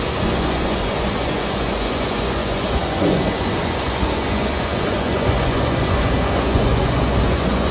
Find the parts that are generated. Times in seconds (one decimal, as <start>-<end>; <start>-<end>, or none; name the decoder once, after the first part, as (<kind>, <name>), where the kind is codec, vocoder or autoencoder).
0.0-7.7 (vocoder, Vocos)